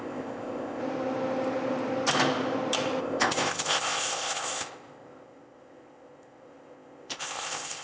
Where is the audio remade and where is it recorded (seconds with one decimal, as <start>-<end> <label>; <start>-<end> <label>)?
0.0-0.8 remade; 0.8-3.0 recorded; 3.0-7.8 remade